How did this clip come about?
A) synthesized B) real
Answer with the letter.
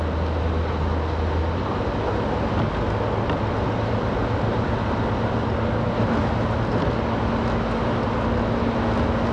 B